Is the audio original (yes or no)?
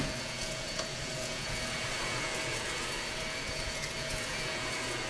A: no